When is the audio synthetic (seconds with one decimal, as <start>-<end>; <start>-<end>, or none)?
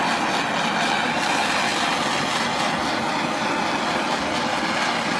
none